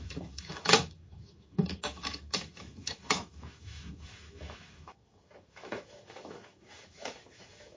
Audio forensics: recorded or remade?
remade